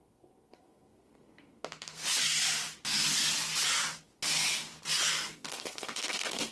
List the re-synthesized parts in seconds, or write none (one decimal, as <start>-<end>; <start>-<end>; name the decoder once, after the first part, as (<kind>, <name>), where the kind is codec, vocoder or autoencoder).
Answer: 0.0-2.0 (codec, SNAC); 5.1-6.5